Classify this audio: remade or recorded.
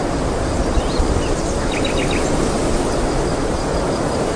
recorded